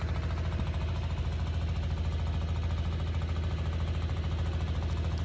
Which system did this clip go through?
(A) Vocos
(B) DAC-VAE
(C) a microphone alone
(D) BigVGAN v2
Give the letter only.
C